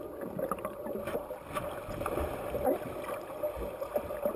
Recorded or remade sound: recorded